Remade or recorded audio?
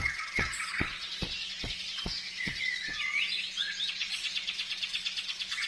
remade